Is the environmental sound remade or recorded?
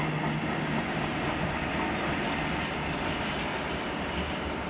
recorded